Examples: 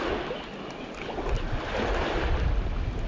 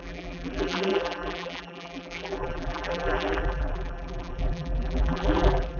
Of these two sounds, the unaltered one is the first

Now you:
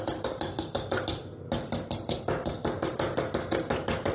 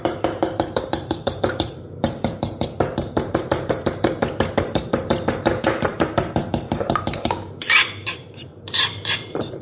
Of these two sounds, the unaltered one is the first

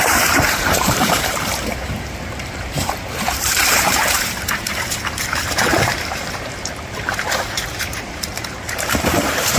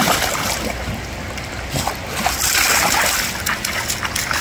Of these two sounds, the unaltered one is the second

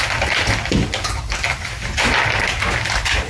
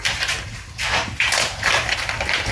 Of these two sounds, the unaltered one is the first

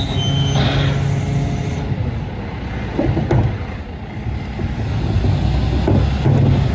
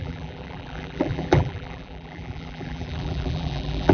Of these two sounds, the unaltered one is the first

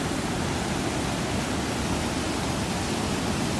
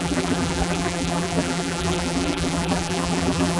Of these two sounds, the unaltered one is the first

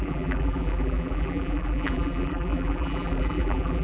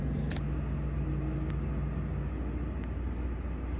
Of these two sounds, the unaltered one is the second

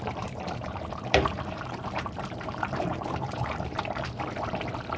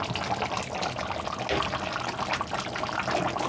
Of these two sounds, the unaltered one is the second